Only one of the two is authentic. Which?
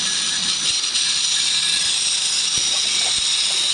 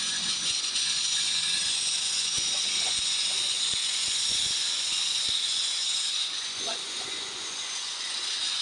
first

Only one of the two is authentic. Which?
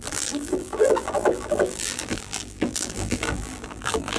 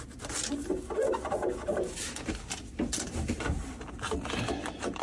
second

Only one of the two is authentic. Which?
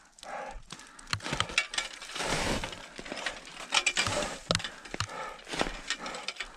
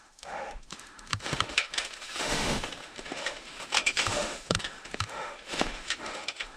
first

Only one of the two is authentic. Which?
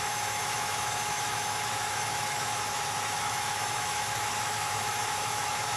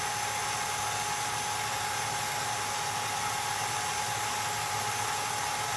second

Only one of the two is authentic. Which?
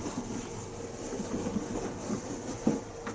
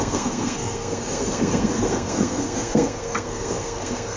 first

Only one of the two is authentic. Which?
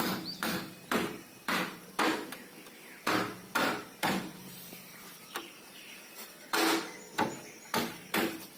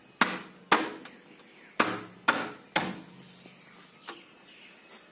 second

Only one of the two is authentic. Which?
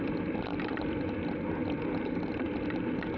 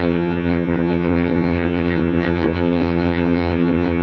first